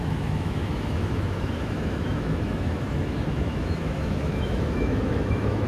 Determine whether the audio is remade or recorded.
remade